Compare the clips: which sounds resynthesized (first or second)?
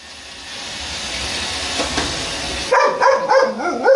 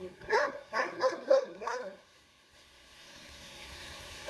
second